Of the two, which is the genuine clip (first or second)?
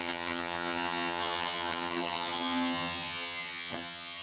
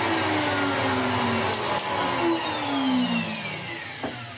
second